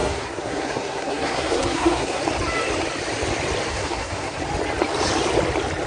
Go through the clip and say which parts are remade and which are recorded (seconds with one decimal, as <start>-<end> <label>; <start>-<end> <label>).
0.0-2.2 remade; 2.2-3.7 recorded; 3.7-4.4 remade; 4.4-5.9 recorded